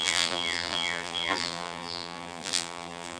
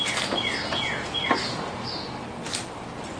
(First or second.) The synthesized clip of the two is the first